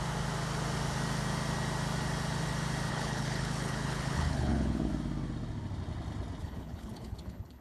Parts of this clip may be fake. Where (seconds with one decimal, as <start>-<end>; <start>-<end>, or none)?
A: 2.9-4.9; 6.4-7.6